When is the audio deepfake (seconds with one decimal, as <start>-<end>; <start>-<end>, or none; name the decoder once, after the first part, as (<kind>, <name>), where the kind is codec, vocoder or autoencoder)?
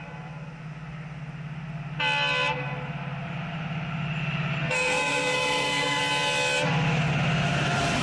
4.6-6.0 (codec, SNAC)